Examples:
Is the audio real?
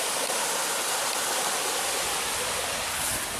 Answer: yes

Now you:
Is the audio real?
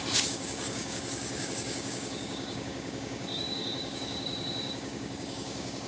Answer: no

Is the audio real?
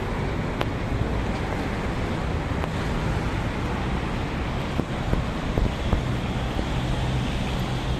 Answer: yes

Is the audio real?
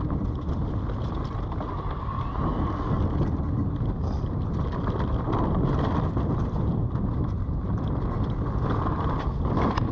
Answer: yes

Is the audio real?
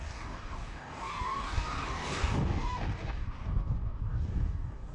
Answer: no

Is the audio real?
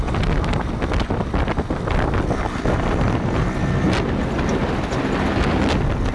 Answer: yes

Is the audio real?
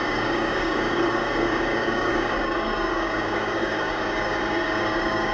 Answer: no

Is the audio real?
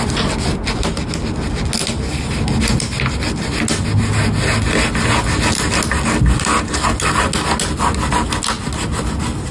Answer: yes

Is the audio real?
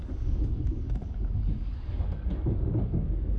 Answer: no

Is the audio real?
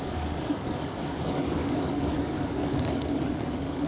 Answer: no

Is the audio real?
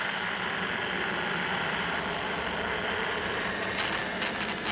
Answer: yes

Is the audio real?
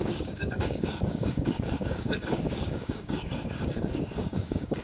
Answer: no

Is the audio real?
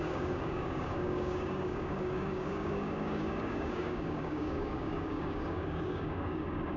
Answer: no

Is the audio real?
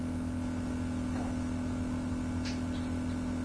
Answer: yes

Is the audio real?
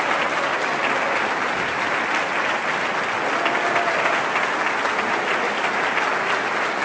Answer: yes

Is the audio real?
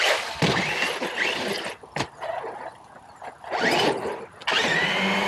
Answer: yes